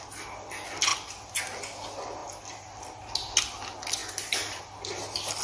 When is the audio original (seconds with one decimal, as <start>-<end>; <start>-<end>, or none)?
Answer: 0.0-0.9; 1.4-2.2; 3.1-4.0; 4.6-5.4